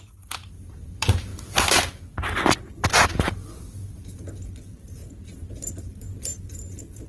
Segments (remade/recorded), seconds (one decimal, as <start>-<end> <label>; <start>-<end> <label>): 0.0-1.3 remade; 1.3-2.7 recorded; 2.7-5.0 remade; 5.0-5.8 recorded; 5.8-7.1 remade